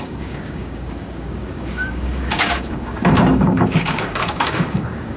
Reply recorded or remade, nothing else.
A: remade